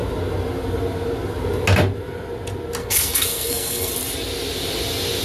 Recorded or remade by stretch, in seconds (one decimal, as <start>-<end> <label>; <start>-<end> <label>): 0.0-2.8 recorded; 2.8-3.9 remade; 3.9-5.2 recorded